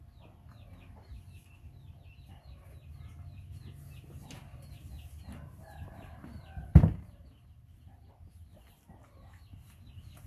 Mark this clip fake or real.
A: real